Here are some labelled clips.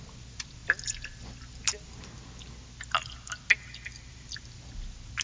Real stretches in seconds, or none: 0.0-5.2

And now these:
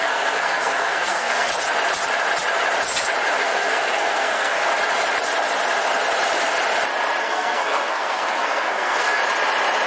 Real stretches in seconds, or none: 1.5-3.4; 4.7-7.2; 9.2-9.9

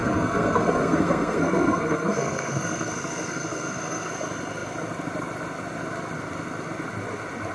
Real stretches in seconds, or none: 4.1-7.5

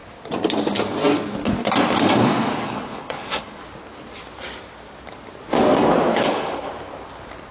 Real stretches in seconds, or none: 0.0-2.5; 3.6-6.1; 6.7-7.5

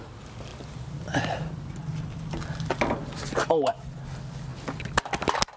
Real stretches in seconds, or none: 0.0-5.6